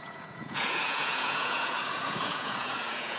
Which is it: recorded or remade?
remade